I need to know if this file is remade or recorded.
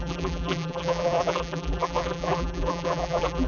remade